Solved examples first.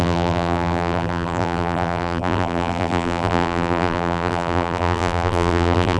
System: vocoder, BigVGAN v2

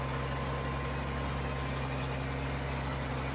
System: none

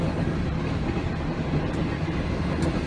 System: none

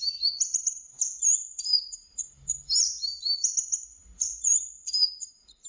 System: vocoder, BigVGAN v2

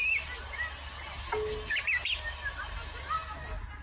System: none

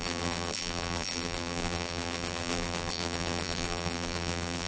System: vocoder, BigVGAN v2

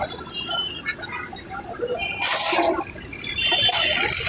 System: none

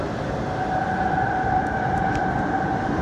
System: none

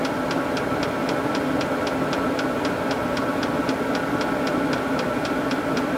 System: none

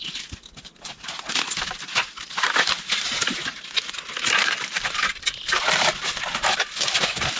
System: none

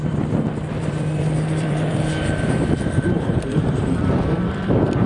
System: vocoder, BigVGAN v2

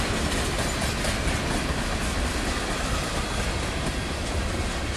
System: none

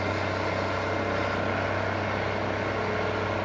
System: none